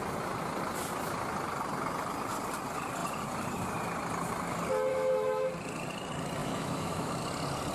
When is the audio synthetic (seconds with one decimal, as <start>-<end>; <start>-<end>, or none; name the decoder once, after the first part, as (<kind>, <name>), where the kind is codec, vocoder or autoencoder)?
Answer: 4.9-5.5 (autoencoder, DAC-VAE); 6.4-7.2